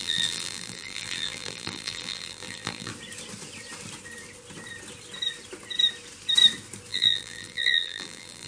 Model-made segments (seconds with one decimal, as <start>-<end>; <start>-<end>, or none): 0.0-2.9; 6.9-8.5